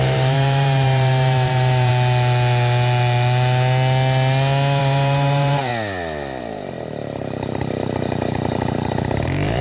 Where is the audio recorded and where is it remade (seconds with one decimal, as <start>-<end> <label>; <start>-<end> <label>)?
0.0-1.9 remade; 1.9-4.8 recorded; 4.8-5.7 remade; 5.7-6.4 recorded; 6.4-9.6 remade